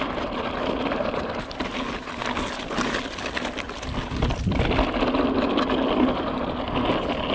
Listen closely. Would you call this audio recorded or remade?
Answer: recorded